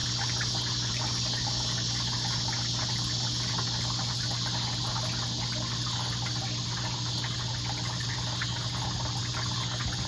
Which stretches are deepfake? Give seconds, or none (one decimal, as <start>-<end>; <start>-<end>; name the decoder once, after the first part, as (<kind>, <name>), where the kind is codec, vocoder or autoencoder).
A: none